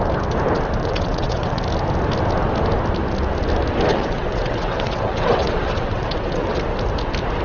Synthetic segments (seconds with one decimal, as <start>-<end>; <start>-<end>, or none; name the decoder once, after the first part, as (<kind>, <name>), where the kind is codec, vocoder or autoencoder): 0.8-1.6 (vocoder, WaveNeXt); 3.9-6.6